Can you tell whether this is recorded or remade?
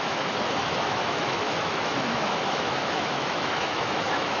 remade